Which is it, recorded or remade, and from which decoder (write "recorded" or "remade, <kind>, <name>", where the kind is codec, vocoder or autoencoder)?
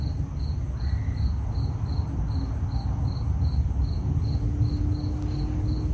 recorded